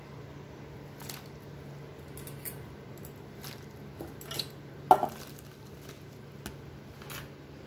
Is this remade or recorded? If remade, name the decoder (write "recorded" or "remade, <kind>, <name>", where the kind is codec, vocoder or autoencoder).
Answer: recorded